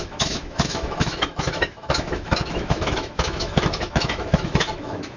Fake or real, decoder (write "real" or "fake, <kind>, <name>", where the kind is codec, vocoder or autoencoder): fake, autoencoder, DAC-VAE